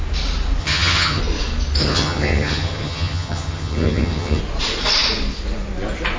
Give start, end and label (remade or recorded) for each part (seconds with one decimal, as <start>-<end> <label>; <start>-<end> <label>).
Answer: 0.0-0.6 recorded; 0.6-1.2 remade; 1.2-1.8 recorded; 1.8-4.4 remade; 4.4-6.2 recorded